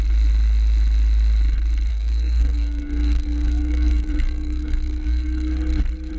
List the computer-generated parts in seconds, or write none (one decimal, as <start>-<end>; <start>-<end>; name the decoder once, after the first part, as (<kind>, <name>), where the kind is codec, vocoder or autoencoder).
1.9-5.5 (codec, SNAC)